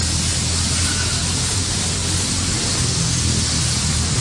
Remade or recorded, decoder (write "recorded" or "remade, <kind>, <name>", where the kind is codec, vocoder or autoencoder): recorded